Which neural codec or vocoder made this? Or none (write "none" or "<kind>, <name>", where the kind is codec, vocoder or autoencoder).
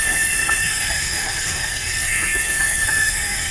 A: codec, SNAC